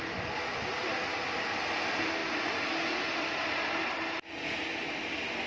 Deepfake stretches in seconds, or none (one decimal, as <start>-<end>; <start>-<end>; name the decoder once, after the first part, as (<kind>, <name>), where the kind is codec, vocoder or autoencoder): none